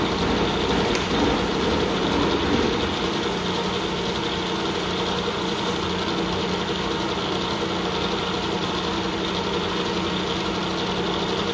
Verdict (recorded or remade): recorded